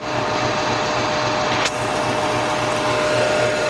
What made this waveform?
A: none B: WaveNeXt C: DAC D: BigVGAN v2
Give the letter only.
A